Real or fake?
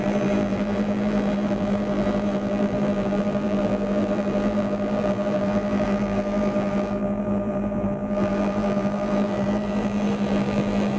fake